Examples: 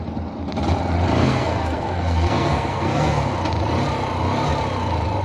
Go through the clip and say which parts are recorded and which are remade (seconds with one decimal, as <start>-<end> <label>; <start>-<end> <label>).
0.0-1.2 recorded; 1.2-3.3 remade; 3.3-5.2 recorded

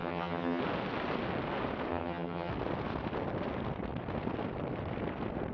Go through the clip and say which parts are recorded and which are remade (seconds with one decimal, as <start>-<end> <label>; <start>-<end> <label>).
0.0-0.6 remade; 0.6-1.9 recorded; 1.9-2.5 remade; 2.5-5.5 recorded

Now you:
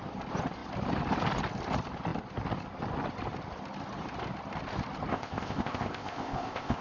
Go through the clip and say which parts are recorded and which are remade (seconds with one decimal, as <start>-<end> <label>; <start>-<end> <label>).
0.0-5.1 recorded; 5.1-6.8 remade